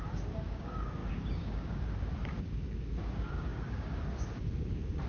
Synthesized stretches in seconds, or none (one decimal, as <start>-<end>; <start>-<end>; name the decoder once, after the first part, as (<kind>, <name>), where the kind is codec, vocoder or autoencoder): 0.0-5.1 (codec, DAC)